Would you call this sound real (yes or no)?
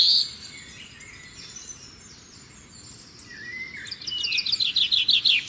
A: yes